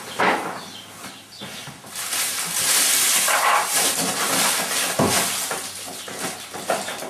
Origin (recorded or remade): recorded